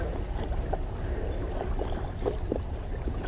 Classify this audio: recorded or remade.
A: recorded